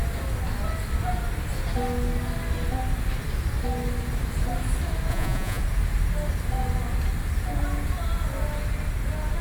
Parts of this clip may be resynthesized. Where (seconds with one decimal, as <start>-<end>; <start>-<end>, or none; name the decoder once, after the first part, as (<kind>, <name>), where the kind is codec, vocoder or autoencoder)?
5.1-5.6 (vocoder, Vocos)